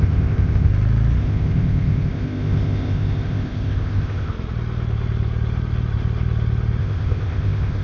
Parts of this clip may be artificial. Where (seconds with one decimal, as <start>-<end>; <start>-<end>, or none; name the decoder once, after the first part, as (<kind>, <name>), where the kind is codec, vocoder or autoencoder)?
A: 0.0-0.7 (codec, ZipCodec); 1.2-4.3; 6.8-7.8